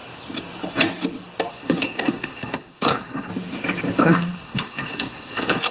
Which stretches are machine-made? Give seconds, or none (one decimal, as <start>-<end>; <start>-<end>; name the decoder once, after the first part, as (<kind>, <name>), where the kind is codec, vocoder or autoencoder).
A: 1.5-3.3 (codec, SNAC); 4.0-5.7